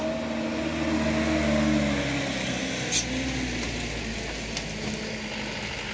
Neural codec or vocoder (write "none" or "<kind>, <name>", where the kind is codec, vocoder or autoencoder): none